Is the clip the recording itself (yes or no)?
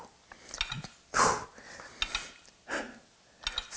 yes